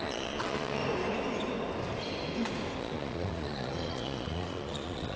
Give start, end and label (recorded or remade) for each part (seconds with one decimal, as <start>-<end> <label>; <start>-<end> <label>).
0.0-0.8 remade; 0.8-2.8 recorded; 2.8-5.2 remade